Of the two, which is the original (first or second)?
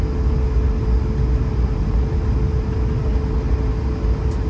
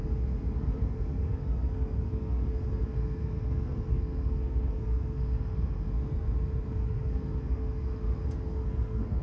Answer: first